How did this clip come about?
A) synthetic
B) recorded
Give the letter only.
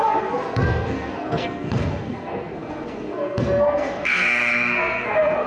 A